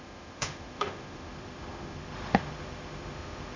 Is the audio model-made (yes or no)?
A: yes